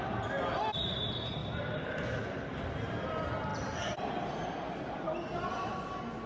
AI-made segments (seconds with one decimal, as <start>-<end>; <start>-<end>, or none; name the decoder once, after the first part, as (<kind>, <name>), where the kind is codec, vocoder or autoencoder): none